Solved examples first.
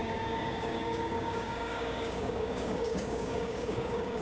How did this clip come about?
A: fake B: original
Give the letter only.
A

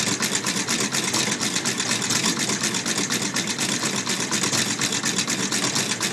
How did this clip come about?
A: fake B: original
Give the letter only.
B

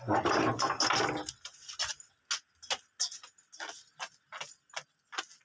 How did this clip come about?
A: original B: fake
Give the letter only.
A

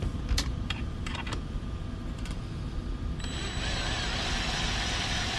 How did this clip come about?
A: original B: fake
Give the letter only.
B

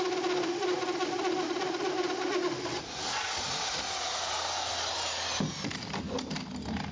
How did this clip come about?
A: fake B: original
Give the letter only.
B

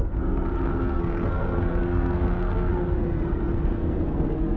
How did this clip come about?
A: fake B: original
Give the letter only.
A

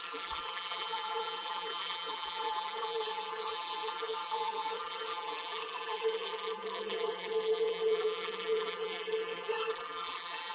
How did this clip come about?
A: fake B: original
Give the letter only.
A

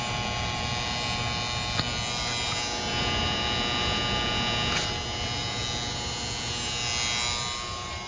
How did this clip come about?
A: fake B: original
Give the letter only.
B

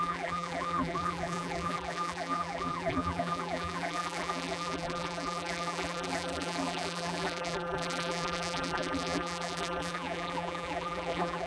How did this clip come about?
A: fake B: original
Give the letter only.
A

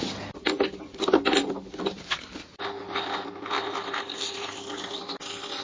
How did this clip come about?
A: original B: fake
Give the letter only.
A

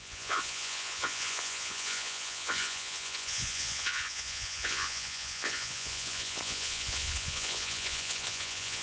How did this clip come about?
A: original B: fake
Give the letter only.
B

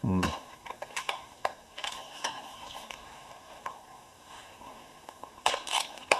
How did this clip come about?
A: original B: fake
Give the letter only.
B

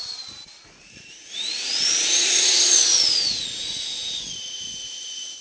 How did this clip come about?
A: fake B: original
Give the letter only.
A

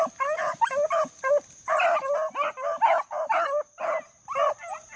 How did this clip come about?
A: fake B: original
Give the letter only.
B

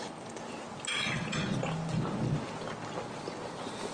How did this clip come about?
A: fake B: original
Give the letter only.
B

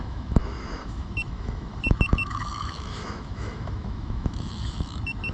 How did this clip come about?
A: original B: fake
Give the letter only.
B